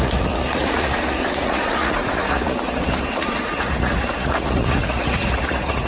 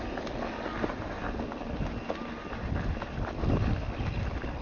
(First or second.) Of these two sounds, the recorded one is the second